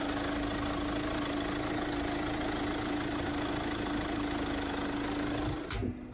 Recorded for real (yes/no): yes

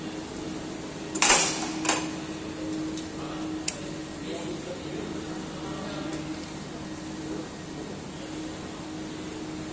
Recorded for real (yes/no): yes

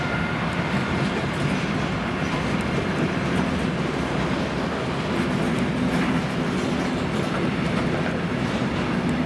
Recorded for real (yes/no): yes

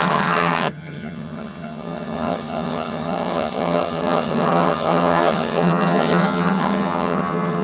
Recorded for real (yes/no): no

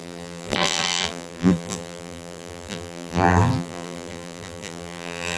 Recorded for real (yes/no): no